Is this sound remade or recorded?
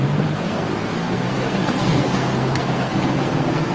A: remade